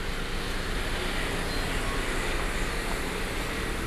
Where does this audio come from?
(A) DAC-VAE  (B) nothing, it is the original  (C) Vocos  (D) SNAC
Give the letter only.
B